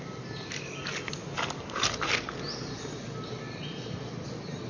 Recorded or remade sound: recorded